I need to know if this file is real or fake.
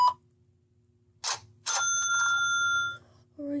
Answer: real